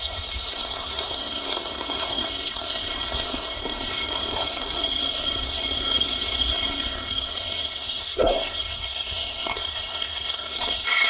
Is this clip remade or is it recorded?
remade